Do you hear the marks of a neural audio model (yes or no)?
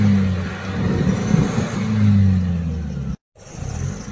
no